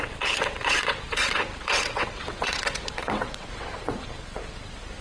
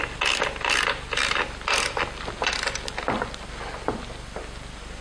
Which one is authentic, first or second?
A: second